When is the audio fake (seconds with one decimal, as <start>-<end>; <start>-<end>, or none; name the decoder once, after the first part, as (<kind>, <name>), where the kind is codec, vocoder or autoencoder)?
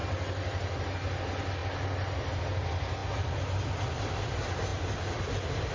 none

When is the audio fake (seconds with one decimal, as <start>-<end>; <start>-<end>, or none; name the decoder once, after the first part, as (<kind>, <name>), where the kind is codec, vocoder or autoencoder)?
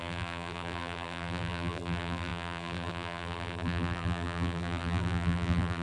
0.0-5.8 (vocoder, BigVGAN v2)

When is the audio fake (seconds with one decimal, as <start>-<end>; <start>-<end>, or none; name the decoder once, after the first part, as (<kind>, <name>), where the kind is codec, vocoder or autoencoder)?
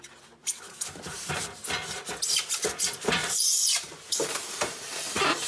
0.4-1.3 (vocoder, BigVGAN v2); 3.2-5.5